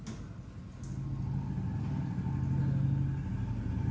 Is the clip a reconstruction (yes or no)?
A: no